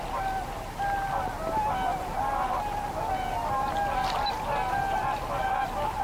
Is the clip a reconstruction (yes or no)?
no